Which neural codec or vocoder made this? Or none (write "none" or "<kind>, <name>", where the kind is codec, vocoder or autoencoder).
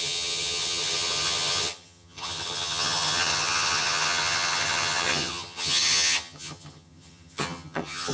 vocoder, HiFi-GAN